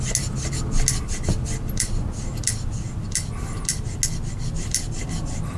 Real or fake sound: real